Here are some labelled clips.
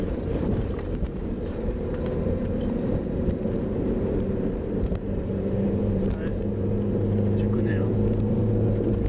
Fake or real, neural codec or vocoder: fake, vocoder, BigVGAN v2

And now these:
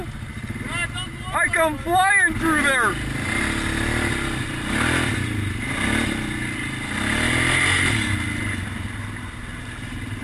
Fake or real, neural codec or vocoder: real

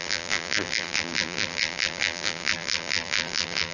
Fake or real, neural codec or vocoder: fake, vocoder, BigVGAN v2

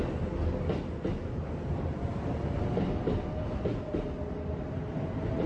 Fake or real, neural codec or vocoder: real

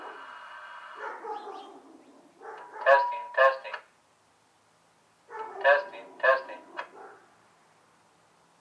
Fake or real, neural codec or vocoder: real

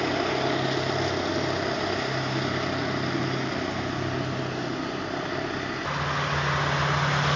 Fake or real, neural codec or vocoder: real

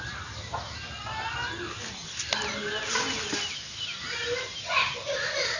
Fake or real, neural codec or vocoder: real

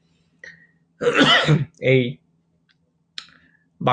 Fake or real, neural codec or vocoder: real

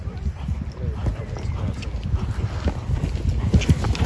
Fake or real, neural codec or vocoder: real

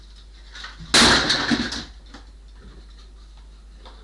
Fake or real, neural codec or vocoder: real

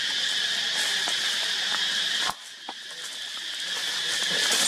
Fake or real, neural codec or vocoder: real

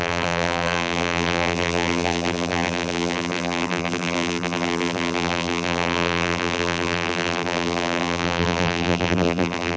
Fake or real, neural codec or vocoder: fake, vocoder, BigVGAN v2